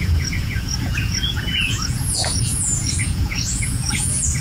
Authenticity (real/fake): fake